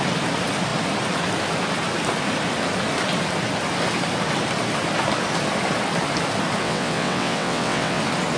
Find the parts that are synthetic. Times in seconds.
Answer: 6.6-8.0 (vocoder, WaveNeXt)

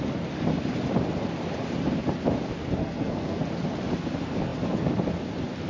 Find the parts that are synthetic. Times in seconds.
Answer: 2.8-3.4 (codec, SNAC)

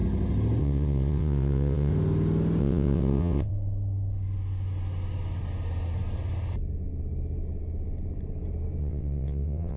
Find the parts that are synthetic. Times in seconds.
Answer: 0.6-1.9 (vocoder, WaveNeXt); 2.6-3.5; 8.8-9.8